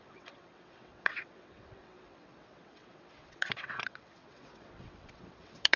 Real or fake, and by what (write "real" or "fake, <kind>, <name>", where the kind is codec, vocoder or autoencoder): fake, vocoder, WaveNeXt